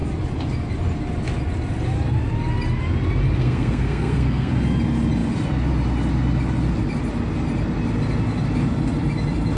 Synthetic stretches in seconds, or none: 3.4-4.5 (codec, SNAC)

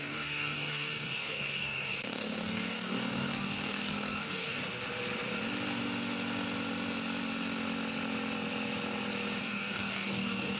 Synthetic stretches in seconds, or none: 0.0-4.6 (codec, DAC); 9.4-10.6

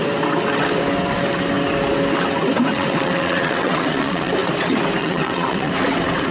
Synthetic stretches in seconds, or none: 2.7-4.3 (vocoder, WaveNeXt); 5.0-5.7

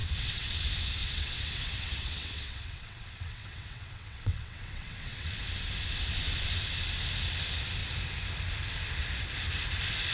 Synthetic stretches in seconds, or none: 0.0-0.5 (vocoder, WaveNeXt); 1.0-5.4

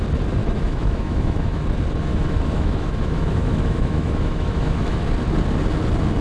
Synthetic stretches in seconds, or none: 0.4-1.6 (autoencoder, DAC-VAE); 2.1-5.0

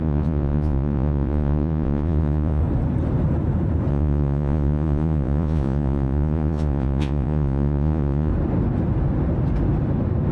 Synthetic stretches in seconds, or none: 0.0-2.6 (vocoder, Vocos); 3.9-8.3

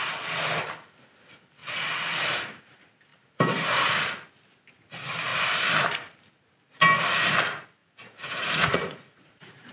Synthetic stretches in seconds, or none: 7.8-9.7 (vocoder, Vocos)

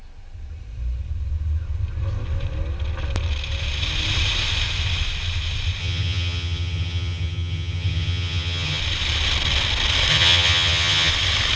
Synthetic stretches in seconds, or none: 5.8-8.8 (vocoder, HiFi-GAN); 10.1-11.1